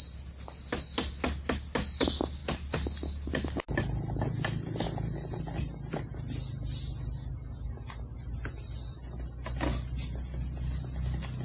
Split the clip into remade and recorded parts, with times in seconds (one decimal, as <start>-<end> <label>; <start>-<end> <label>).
0.0-11.4 recorded